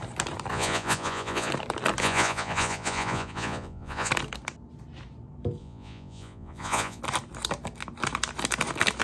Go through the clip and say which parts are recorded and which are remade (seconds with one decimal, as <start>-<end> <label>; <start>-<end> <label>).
0.0-0.5 recorded; 0.5-1.5 remade; 1.5-2.0 recorded; 2.0-4.1 remade; 4.1-5.6 recorded; 5.6-7.0 remade; 7.0-9.0 recorded